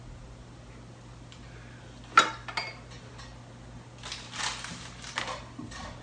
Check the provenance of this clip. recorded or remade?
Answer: recorded